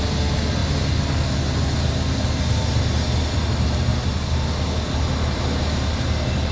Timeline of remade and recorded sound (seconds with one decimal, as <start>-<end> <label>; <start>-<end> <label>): 0.0-6.5 recorded